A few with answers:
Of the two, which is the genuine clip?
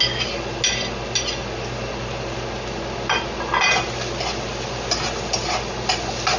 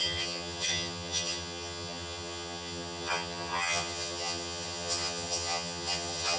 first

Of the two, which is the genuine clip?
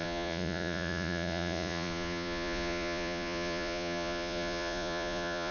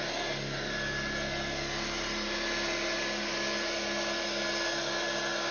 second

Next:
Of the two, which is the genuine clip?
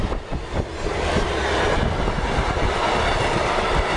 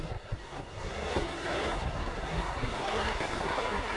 first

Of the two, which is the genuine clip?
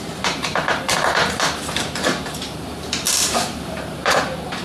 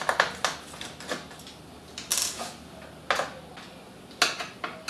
second